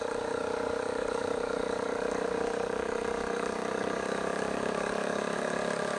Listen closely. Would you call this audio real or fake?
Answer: fake